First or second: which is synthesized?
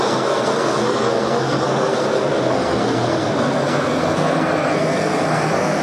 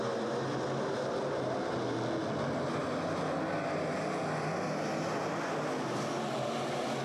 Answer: first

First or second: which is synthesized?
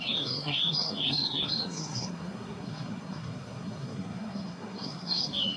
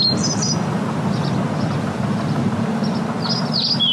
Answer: first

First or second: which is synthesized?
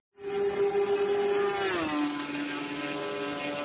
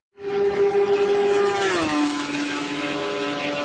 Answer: second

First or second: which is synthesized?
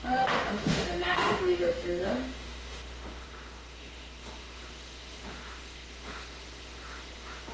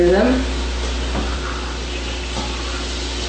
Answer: first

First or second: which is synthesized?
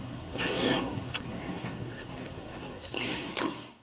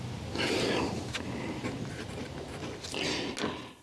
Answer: first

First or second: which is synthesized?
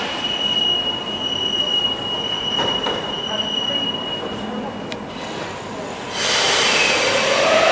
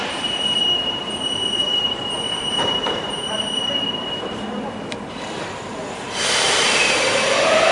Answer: second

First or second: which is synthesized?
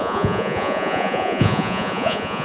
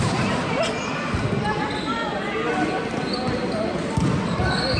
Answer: first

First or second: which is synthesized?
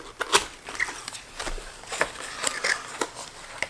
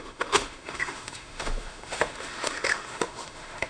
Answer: second